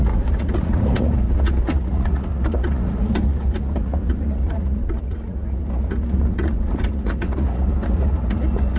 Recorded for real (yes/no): no